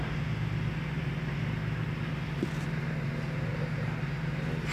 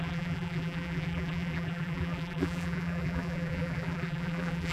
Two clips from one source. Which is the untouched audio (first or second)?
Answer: first